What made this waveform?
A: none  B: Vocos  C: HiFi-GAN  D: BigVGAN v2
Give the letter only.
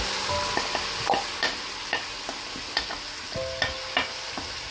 A